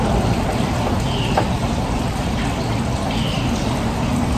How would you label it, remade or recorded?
remade